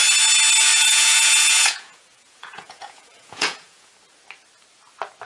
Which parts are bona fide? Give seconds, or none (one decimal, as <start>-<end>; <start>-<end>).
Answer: 0.0-0.7; 3.9-5.3